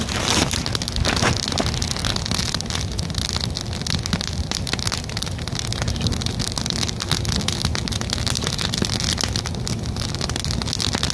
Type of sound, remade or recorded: recorded